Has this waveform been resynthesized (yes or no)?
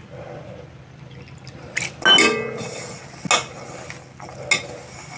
no